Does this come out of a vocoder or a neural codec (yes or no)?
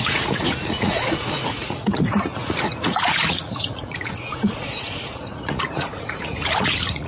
yes